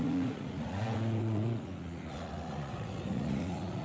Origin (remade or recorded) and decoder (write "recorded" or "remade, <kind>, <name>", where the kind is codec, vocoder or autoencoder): remade, vocoder, Vocos